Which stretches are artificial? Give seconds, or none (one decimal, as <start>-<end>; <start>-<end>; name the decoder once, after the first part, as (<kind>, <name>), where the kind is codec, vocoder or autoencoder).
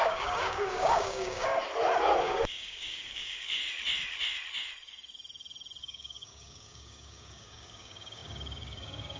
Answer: 0.0-1.5 (codec, DAC); 2.2-3.6; 5.8-9.2